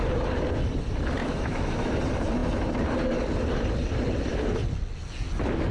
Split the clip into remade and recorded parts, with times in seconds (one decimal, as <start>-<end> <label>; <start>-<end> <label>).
0.0-1.2 recorded; 1.2-1.9 remade; 1.9-5.7 recorded